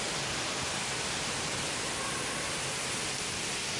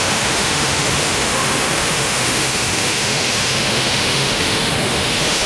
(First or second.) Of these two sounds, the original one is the first